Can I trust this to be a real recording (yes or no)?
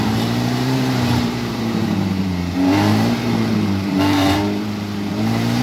no